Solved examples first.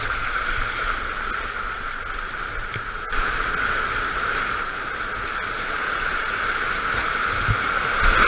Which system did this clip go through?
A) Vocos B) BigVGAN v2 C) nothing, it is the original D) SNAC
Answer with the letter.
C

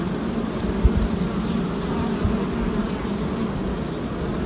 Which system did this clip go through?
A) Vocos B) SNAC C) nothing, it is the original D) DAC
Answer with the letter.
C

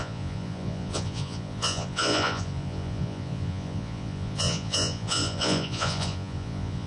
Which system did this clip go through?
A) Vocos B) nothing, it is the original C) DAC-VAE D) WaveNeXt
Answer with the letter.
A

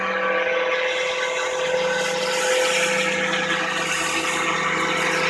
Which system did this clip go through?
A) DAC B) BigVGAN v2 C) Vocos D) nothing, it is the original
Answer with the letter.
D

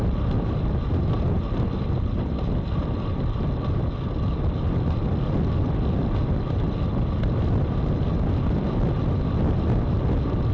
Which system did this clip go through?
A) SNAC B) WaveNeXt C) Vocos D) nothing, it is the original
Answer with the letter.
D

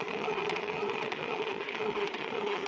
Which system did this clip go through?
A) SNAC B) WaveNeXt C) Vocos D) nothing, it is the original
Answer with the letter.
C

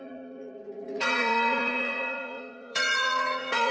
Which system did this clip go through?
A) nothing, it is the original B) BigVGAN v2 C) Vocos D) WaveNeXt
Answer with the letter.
C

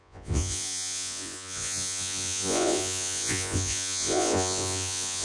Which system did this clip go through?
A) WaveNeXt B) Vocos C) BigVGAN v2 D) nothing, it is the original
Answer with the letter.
B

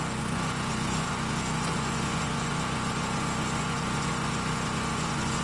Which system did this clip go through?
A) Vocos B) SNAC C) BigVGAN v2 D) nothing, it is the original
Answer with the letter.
A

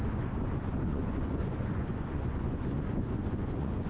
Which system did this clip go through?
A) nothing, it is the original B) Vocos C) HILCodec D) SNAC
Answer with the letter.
B